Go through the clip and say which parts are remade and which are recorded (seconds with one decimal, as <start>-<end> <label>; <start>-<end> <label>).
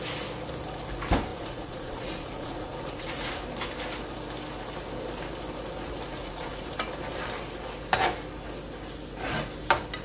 0.0-1.3 recorded; 1.3-3.3 remade; 3.3-6.1 recorded; 6.1-6.7 remade; 6.7-10.0 recorded